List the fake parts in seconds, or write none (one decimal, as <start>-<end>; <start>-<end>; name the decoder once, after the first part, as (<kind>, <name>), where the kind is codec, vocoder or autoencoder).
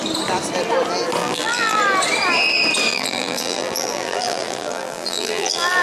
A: 1.2-1.8 (vocoder, BigVGAN v2); 2.9-5.8